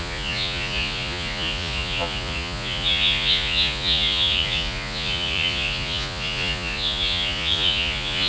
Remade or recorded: remade